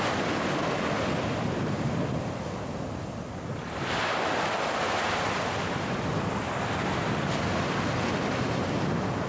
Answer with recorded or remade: recorded